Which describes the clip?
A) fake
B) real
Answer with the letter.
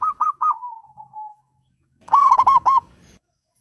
A